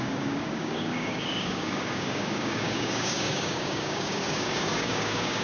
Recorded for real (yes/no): no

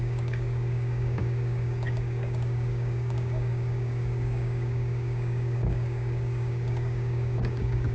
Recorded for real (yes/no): no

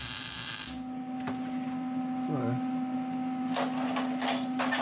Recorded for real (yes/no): yes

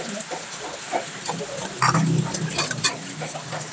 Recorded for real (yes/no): yes